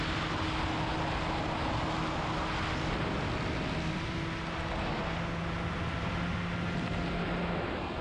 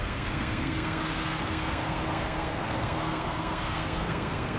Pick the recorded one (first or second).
first